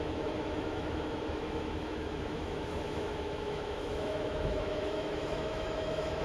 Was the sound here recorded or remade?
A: remade